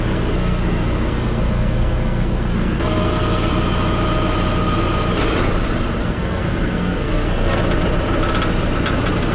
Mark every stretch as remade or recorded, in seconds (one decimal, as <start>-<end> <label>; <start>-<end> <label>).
0.0-3.5 remade; 3.5-6.0 recorded; 6.0-7.6 remade; 7.6-9.3 recorded